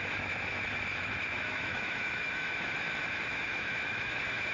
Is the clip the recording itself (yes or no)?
no